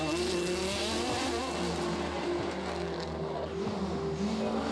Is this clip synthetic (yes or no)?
no